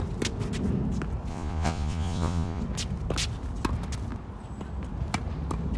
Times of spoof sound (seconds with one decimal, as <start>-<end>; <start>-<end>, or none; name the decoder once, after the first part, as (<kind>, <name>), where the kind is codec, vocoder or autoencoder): 1.3-2.6 (vocoder, Vocos)